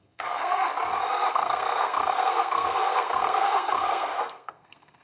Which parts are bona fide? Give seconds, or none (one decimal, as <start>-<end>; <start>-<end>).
0.7-1.3